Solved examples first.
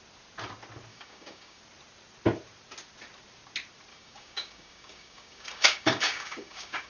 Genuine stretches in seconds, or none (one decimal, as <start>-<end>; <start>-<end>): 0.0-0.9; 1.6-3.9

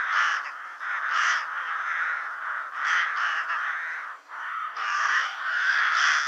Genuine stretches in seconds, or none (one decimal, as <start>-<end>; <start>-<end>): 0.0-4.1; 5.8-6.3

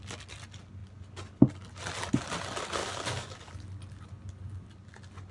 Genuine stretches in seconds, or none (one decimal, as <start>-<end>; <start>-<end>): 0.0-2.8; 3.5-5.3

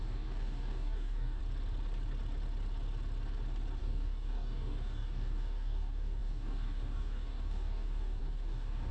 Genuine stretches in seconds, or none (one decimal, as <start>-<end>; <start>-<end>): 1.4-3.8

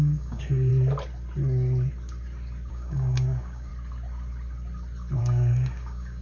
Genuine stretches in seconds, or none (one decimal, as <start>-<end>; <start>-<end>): 0.7-2.7; 3.7-5.2

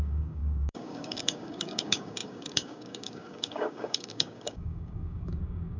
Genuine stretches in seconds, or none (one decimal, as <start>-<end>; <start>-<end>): none